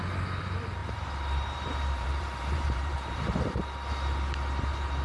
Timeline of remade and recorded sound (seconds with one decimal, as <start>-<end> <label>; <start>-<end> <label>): 0.0-0.8 recorded; 0.8-3.6 remade; 3.6-5.0 recorded